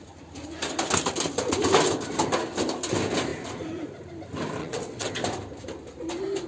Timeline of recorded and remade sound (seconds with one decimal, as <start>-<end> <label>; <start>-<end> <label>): 0.0-4.6 recorded; 4.6-5.1 remade; 5.1-6.5 recorded